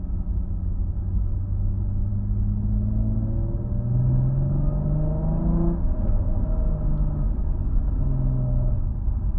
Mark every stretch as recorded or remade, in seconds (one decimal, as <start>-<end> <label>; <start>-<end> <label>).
0.0-9.4 recorded